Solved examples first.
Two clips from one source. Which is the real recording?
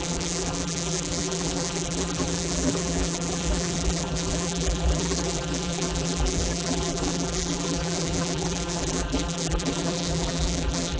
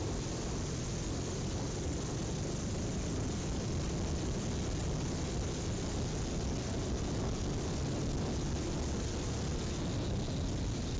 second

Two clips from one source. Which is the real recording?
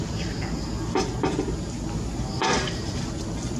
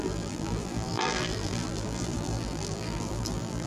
first